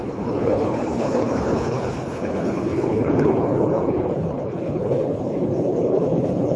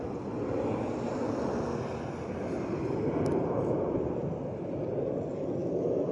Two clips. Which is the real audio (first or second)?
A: second